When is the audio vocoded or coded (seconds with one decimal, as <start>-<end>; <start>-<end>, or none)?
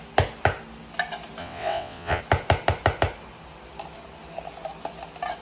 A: 1.4-2.2